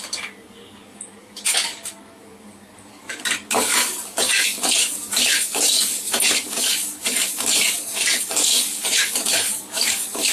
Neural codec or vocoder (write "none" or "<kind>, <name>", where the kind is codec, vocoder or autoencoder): codec, DAC